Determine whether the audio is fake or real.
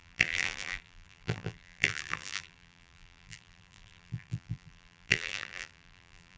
fake